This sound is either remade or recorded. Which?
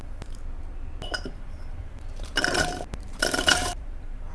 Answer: remade